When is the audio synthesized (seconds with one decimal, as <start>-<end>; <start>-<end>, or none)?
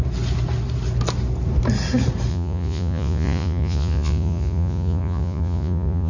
2.3-6.1